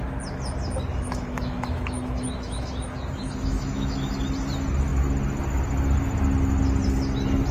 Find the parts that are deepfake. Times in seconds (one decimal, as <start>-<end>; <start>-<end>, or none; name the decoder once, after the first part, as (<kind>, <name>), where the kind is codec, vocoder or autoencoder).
0.9-4.1 (autoencoder, DAC-VAE)